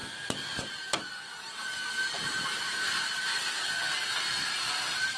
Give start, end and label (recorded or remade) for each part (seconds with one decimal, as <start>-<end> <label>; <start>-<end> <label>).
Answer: 0.0-0.6 recorded; 0.6-3.3 remade; 3.3-3.9 recorded; 3.9-5.2 remade